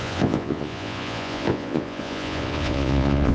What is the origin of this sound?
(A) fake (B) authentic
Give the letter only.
A